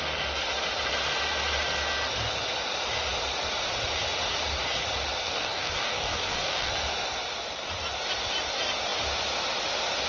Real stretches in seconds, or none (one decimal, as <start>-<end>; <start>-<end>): 0.0-5.2; 6.7-10.1